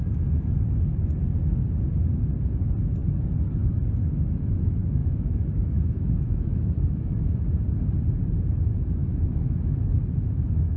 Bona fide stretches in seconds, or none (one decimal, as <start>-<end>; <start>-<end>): 0.0-3.0; 3.7-5.0; 6.9-9.0